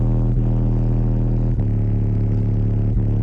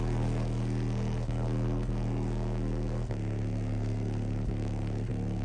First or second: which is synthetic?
second